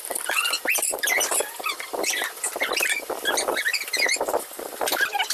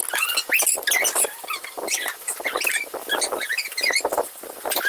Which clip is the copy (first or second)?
first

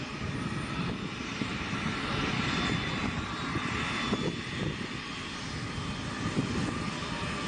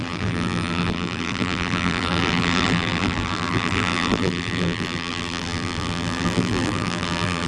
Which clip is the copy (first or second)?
second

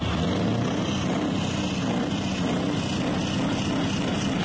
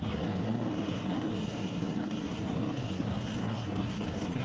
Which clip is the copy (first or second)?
second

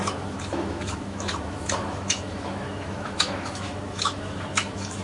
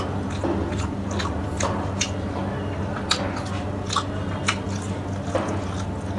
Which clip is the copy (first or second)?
first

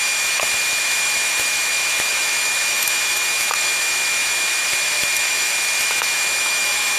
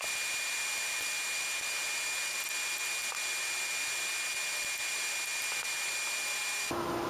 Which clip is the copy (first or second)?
first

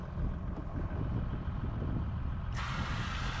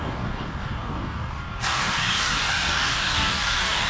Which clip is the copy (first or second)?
second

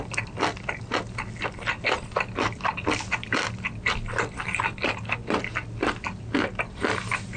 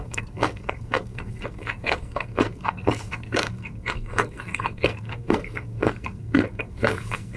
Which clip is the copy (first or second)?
second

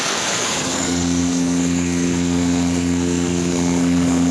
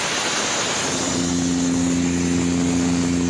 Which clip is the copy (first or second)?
first